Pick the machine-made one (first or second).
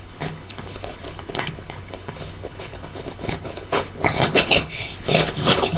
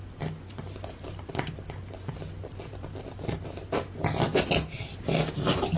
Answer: first